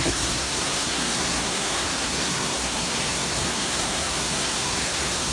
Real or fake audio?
fake